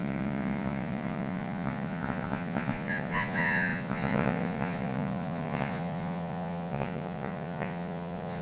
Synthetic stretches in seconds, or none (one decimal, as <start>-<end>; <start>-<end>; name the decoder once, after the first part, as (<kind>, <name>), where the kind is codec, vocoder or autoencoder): 0.0-8.4 (vocoder, Vocos)